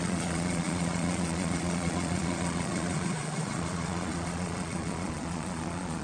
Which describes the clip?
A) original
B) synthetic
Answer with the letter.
B